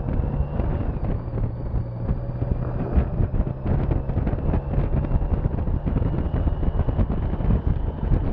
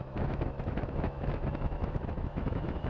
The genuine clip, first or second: first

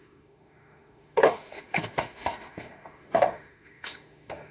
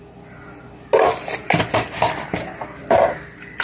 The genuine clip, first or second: second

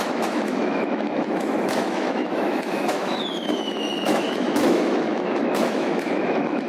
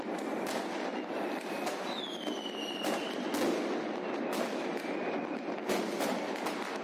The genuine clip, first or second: second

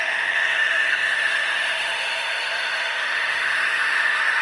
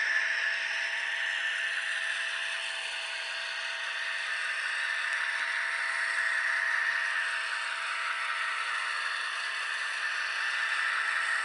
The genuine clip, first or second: second